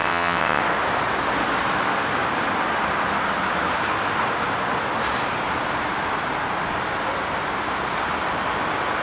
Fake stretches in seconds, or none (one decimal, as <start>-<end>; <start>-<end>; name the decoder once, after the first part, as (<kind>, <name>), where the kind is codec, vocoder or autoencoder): 0.0-0.6 (vocoder, WaveNeXt)